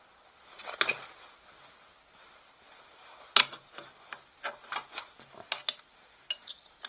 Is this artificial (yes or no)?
no